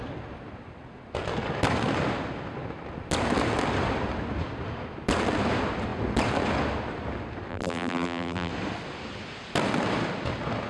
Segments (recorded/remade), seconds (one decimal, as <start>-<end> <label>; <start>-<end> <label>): 0.0-7.5 recorded; 7.5-8.5 remade; 8.5-10.7 recorded